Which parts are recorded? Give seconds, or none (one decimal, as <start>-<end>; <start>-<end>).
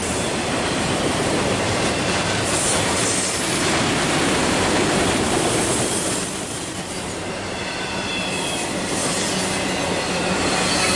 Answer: 9.0-11.0